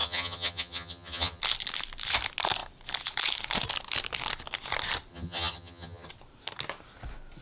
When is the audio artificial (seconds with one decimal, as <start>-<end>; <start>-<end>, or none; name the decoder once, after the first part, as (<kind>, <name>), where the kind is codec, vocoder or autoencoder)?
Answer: 0.0-1.4 (vocoder, HiFi-GAN); 5.1-6.1